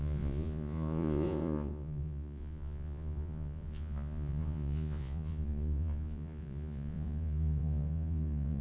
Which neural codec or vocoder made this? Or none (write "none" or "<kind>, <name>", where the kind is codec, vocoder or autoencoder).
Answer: vocoder, Vocos